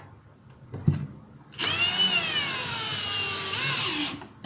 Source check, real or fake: real